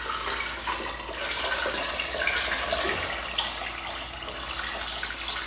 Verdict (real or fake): real